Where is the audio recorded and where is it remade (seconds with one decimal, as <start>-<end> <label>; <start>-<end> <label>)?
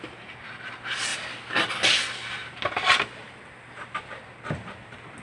0.0-1.1 recorded; 1.1-1.7 remade; 1.7-2.4 recorded; 2.4-4.2 remade; 4.2-5.2 recorded